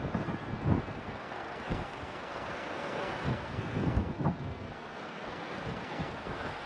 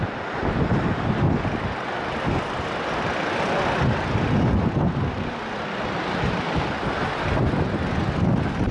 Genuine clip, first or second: second